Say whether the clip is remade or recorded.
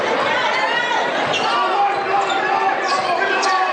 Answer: recorded